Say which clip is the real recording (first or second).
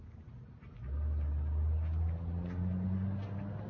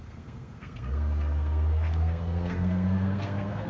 first